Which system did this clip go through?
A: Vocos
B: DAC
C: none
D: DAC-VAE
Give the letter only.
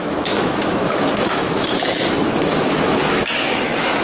D